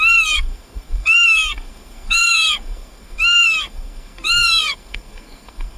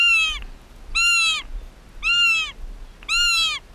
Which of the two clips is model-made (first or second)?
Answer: first